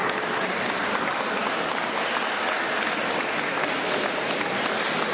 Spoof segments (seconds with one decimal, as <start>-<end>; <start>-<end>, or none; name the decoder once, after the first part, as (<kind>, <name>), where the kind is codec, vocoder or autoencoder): none

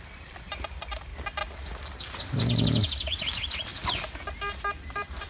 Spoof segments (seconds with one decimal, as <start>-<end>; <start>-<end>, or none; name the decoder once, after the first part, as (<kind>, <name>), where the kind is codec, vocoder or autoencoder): 0.0-1.1 (vocoder, BigVGAN v2); 2.0-3.7; 4.8-5.3

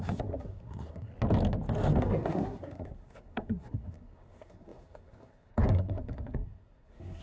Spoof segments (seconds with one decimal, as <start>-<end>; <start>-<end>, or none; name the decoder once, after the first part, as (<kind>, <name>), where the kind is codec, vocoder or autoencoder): 0.0-1.1 (codec, SNAC); 2.0-7.2

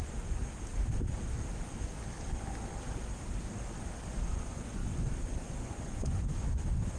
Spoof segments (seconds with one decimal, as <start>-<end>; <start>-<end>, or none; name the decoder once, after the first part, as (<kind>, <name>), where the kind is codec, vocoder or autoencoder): 0.0-0.4 (vocoder, Vocos); 4.3-7.0

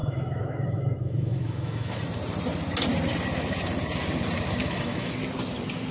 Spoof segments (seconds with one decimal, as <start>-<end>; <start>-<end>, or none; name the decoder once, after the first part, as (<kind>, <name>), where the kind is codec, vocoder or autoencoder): 0.0-2.0 (autoencoder, DAC-VAE); 4.6-5.1

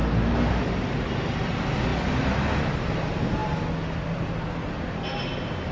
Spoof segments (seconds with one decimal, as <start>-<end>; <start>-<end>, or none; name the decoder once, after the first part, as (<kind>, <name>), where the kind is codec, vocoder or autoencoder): none

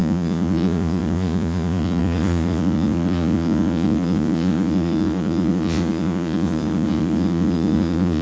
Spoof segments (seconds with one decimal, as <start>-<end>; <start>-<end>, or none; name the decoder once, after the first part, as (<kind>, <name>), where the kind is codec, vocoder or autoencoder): 0.0-8.2 (vocoder, Vocos)

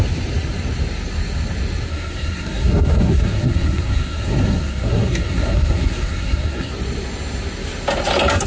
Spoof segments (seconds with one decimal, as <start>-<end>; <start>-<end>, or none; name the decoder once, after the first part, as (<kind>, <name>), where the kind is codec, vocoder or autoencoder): 1.9-6.7 (codec, SNAC)